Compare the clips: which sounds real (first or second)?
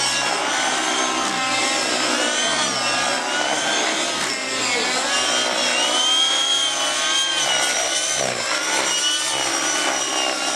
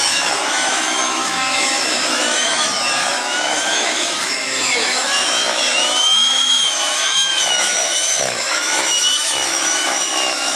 first